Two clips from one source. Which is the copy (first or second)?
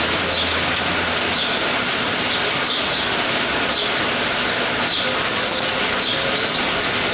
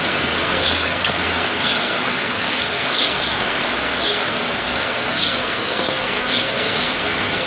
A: second